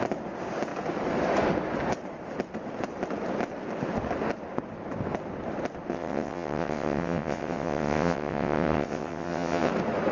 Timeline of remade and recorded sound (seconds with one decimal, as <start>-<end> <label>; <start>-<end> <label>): 0.0-5.9 recorded; 5.9-9.7 remade; 9.7-10.1 recorded